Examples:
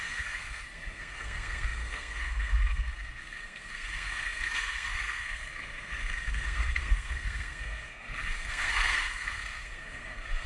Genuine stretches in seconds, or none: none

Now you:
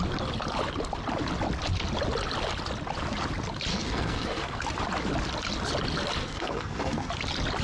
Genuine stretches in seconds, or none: 0.0-3.7; 4.6-6.2; 7.1-7.6

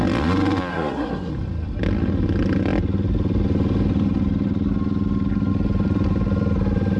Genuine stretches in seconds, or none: 0.0-0.7; 1.3-7.0

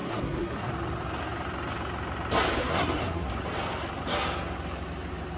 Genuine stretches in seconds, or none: 0.7-2.6; 3.3-5.4